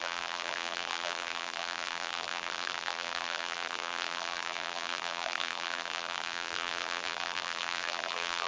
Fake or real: fake